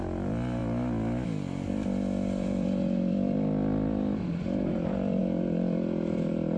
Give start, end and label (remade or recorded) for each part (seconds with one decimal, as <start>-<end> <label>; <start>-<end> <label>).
0.0-0.6 remade; 0.6-1.7 recorded; 1.7-6.6 remade